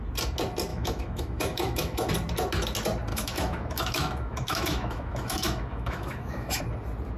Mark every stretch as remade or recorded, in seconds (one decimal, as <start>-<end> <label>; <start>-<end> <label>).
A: 0.0-0.7 recorded; 0.7-2.1 remade; 2.1-3.1 recorded; 3.1-6.6 remade; 6.6-7.2 recorded